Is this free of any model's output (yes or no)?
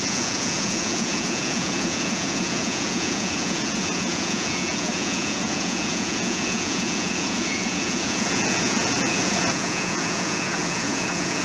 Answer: no